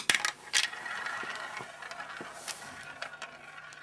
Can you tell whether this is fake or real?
real